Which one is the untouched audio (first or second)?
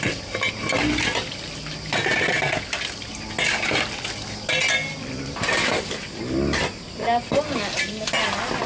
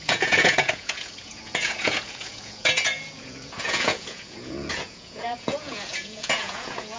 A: first